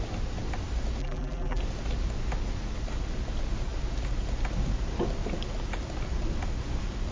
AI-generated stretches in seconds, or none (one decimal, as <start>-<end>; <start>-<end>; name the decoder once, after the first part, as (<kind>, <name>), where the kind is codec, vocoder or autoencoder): 1.0-1.6 (vocoder, BigVGAN v2)